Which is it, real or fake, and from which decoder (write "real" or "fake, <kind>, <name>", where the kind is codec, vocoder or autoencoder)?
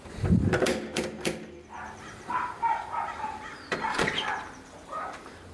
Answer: fake, vocoder, BigVGAN v2